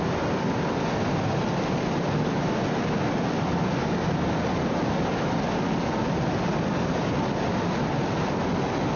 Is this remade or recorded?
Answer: recorded